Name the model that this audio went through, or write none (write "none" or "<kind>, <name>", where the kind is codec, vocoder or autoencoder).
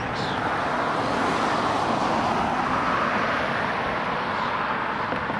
none